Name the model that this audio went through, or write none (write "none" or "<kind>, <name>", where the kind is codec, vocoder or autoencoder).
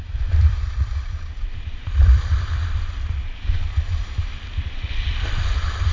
vocoder, BigVGAN v2